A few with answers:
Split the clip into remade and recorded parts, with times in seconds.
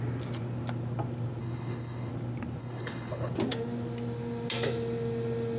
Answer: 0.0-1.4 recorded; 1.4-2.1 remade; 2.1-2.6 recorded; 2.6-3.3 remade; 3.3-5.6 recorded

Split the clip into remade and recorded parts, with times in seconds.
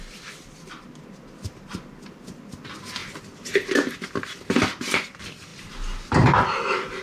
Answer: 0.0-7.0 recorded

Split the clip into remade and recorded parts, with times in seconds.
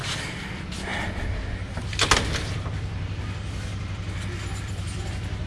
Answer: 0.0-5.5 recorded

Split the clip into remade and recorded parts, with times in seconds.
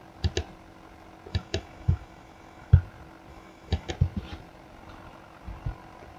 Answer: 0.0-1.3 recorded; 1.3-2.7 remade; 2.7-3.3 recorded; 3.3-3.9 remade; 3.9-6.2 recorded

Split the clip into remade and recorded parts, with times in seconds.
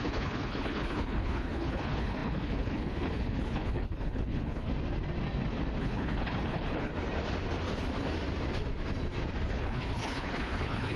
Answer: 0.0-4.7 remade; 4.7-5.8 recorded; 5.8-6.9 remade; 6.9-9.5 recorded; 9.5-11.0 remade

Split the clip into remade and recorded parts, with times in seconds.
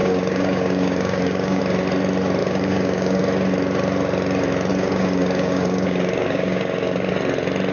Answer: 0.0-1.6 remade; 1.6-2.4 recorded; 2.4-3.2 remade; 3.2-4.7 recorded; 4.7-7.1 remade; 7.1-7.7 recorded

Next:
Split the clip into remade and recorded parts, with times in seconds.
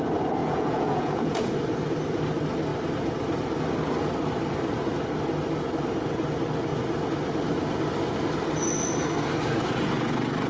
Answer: 0.0-0.4 recorded; 0.4-1.5 remade; 1.5-10.5 recorded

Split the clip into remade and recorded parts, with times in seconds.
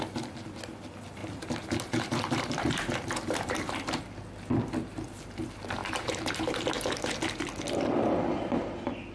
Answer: 0.0-1.2 recorded; 1.2-4.0 remade; 4.0-5.8 recorded; 5.8-7.3 remade; 7.3-9.1 recorded